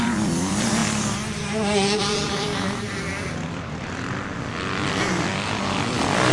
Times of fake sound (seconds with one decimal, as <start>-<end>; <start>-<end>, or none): 0.0-0.8; 2.0-6.3